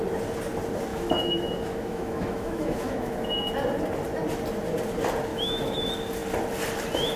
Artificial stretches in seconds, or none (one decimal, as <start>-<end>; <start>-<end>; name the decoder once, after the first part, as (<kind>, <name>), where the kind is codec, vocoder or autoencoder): 0.9-3.5 (autoencoder, DAC-VAE); 5.3-5.8